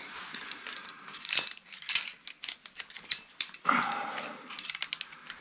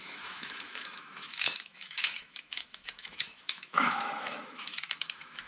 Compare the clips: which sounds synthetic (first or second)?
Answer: second